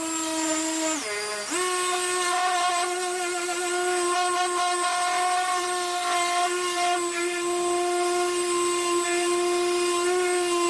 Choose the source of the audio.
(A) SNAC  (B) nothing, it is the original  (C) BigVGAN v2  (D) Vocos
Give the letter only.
B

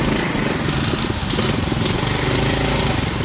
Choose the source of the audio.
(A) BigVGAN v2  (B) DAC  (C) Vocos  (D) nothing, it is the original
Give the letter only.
D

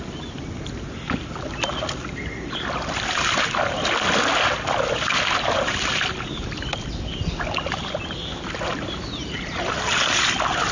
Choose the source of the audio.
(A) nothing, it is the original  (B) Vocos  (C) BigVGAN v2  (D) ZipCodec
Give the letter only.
A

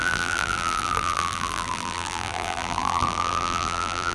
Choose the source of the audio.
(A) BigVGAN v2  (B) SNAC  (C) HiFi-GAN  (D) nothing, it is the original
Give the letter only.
A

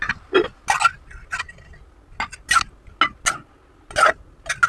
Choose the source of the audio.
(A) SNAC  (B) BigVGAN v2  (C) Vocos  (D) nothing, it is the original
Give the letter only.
D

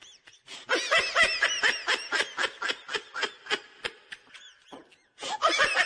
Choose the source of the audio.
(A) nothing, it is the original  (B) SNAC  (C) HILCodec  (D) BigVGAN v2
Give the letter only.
A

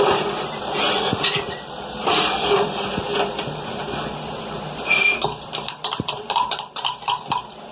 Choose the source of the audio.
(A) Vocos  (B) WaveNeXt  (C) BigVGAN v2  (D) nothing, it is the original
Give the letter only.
C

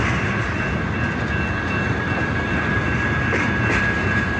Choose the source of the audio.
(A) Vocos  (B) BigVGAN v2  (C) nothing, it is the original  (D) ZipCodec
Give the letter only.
C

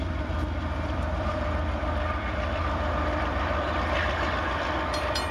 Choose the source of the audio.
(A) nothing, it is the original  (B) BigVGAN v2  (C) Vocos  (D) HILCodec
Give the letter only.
B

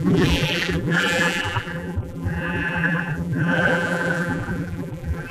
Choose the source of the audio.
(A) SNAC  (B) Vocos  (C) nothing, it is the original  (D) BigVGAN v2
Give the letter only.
D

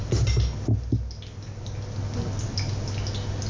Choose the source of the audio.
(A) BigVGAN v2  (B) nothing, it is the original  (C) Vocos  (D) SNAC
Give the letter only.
B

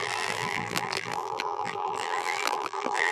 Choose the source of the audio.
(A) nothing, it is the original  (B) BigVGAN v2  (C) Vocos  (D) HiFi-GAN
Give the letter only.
B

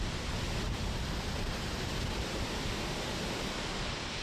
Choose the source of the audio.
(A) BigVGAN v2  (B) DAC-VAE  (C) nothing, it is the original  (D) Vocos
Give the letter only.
C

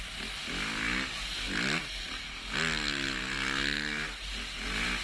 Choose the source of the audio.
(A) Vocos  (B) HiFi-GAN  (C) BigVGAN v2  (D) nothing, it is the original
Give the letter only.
D